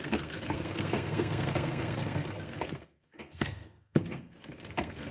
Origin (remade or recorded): remade